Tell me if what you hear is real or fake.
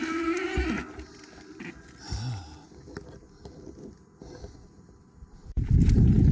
real